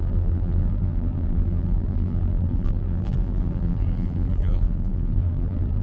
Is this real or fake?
fake